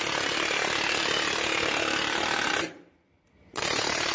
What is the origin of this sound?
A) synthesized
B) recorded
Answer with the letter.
B